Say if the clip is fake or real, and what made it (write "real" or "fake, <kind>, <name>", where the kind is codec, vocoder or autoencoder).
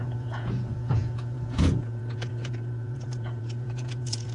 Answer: fake, vocoder, Vocos